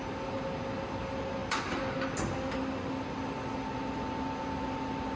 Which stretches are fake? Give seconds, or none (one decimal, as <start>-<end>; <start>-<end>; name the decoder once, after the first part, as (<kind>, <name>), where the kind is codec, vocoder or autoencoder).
none